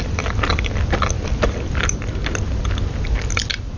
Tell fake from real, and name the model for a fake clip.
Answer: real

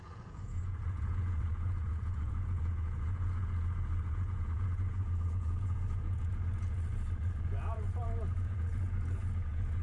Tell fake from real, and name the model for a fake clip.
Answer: fake, vocoder, Vocos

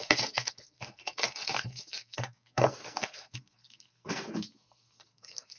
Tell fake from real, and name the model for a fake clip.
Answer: fake, codec, SNAC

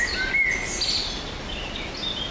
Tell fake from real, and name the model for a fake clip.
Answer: real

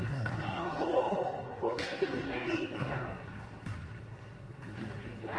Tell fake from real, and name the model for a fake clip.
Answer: fake, codec, SNAC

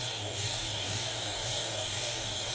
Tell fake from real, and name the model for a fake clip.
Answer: fake, codec, DAC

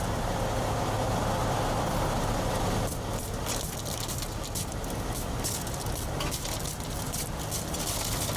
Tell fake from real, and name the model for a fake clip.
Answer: real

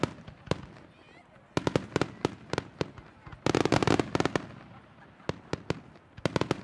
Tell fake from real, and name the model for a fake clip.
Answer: real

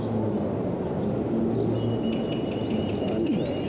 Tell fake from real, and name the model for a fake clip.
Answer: real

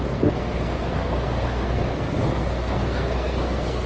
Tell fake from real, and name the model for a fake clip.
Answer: fake, codec, SNAC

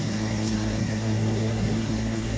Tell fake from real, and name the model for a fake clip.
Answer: fake, codec, SNAC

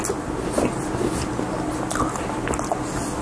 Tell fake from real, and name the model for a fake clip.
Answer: real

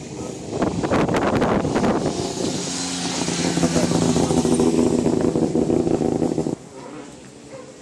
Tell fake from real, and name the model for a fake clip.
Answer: real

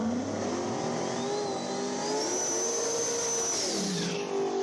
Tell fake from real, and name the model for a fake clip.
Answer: real